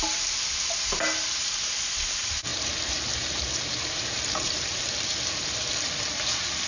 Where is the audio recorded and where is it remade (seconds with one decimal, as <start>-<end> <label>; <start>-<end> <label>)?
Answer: 0.0-2.5 recorded; 2.5-6.7 remade